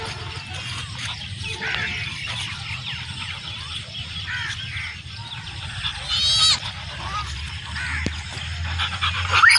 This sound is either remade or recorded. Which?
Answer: recorded